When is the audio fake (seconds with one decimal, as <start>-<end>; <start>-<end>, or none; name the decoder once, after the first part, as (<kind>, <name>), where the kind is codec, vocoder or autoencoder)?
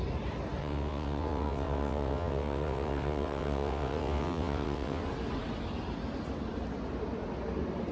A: 0.6-5.0 (vocoder, WaveNeXt)